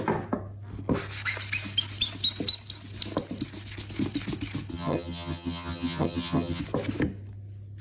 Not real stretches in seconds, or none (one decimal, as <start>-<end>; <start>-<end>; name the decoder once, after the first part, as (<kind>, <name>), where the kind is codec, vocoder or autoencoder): 4.7-6.6 (vocoder, HiFi-GAN)